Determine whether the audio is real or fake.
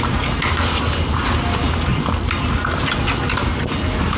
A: real